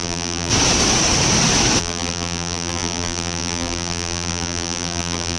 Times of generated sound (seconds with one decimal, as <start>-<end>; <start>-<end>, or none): 0.0-0.5; 1.8-5.4